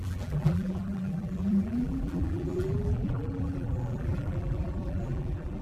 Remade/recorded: remade